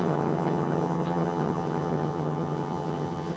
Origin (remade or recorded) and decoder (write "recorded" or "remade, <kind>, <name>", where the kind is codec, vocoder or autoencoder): remade, vocoder, HiFi-GAN